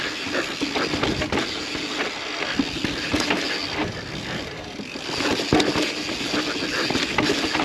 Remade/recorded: recorded